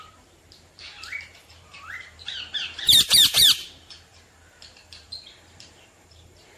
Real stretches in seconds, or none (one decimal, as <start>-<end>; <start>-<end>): none